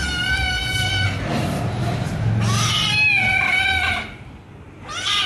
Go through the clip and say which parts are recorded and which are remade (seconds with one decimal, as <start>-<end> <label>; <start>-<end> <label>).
0.0-5.3 recorded